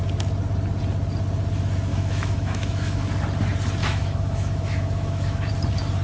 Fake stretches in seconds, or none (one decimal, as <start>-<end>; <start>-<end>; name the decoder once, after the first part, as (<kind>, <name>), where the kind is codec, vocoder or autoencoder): 1.9-3.0 (autoencoder, DAC-VAE); 3.8-5.5